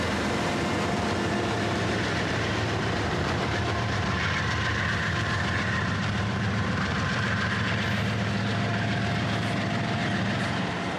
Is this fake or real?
fake